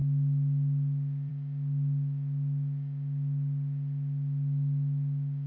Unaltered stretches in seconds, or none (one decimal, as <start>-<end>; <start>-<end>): 0.0-5.5